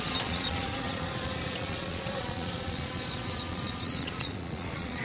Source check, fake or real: fake